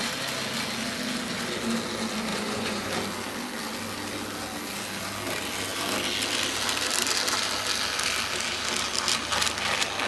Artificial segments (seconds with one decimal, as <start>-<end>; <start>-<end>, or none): 2.3-2.9